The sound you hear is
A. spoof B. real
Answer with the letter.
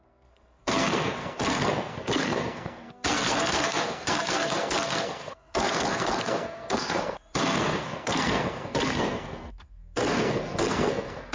A